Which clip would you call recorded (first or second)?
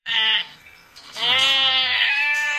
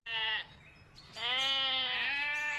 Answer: second